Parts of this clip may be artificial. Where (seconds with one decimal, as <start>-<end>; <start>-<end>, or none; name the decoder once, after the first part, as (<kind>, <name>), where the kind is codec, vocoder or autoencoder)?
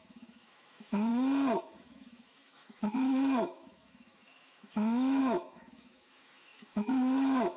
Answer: 0.0-1.1 (autoencoder, DAC-VAE); 1.6-7.6